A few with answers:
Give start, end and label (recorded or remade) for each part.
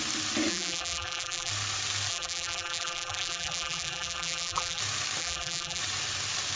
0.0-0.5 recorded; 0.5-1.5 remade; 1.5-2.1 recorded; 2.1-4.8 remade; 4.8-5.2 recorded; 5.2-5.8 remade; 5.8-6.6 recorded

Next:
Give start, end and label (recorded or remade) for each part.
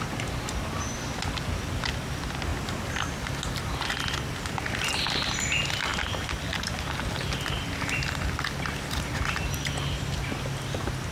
0.0-11.1 recorded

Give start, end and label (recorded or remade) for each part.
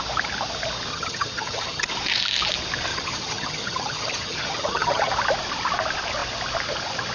0.0-0.9 recorded; 0.9-1.9 remade; 1.9-2.9 recorded; 2.9-5.1 remade; 5.1-7.1 recorded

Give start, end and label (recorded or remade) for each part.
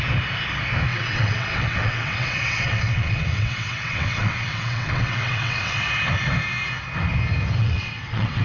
0.0-0.9 recorded; 0.9-5.9 remade; 5.9-7.6 recorded; 7.6-8.4 remade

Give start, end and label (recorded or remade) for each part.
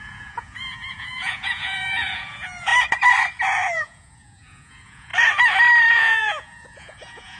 0.0-2.7 remade; 2.7-3.7 recorded; 3.7-5.1 remade; 5.1-5.9 recorded; 5.9-7.4 remade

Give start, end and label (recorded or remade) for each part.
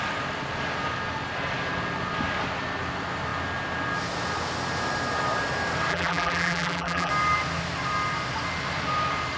0.0-5.9 recorded; 5.9-7.1 remade; 7.1-9.4 recorded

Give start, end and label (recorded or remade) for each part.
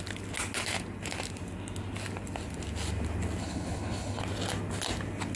0.0-3.4 recorded; 3.4-4.2 remade; 4.2-5.4 recorded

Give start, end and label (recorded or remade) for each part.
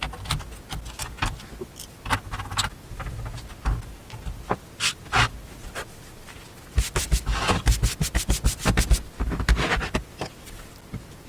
0.0-5.6 recorded; 5.6-6.6 remade; 6.6-11.3 recorded